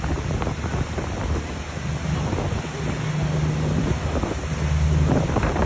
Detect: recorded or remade recorded